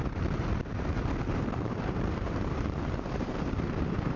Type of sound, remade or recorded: remade